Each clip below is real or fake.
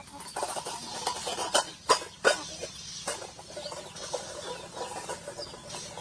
real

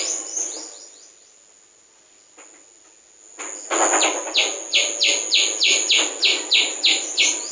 real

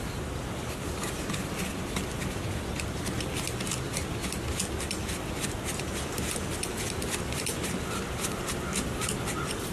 real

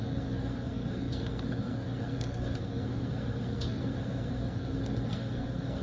fake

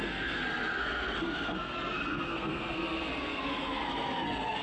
fake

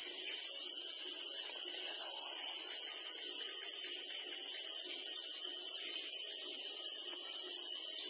real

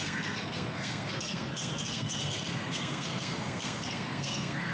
fake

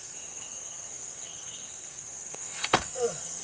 fake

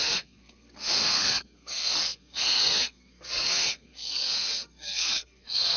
fake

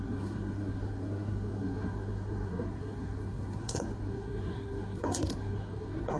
fake